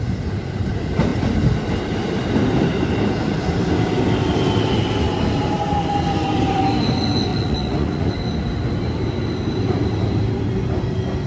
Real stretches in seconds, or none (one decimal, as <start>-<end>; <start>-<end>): 0.0-7.3; 8.1-11.3